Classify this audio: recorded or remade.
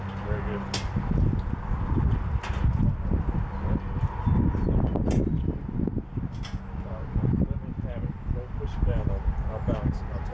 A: recorded